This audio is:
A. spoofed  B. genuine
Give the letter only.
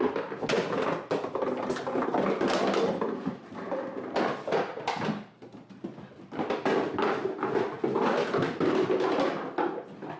B